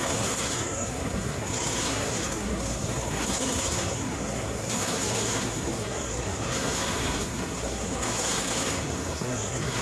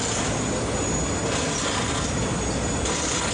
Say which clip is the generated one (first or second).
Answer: first